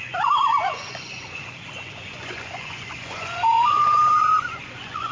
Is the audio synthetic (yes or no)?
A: yes